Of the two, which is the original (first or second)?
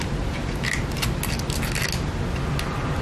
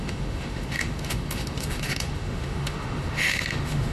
first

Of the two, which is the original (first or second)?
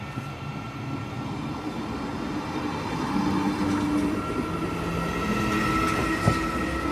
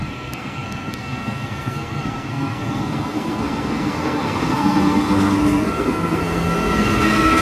first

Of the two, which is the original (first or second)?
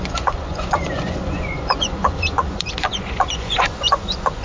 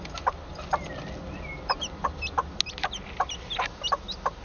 second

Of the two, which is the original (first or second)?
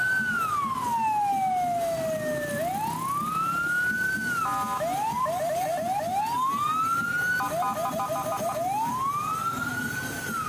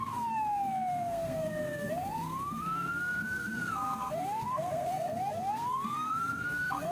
first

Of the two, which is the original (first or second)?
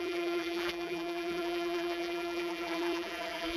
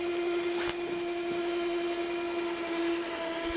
second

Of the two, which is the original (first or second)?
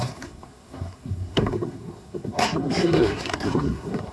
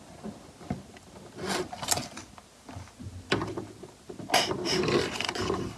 second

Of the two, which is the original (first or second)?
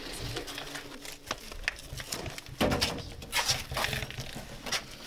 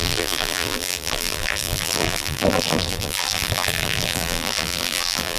first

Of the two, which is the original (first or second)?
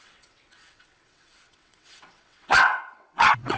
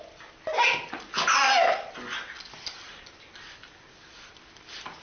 second